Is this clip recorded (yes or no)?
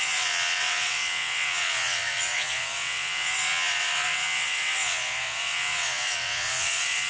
no